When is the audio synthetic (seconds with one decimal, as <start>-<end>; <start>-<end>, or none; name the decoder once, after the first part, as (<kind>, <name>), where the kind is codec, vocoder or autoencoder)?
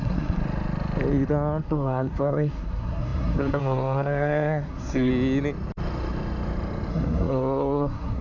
0.0-0.4 (codec, SNAC); 1.6-5.1; 6.9-8.2